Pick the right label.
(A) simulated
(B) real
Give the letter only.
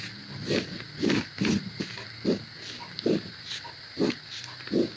B